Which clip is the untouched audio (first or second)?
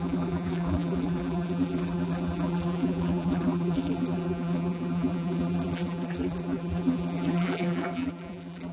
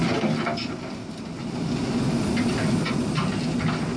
second